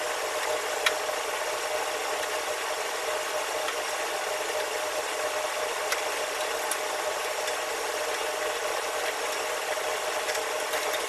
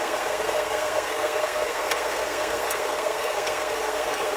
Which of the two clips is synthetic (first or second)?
second